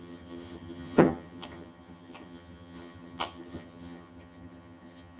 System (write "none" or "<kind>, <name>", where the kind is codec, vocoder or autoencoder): vocoder, HiFi-GAN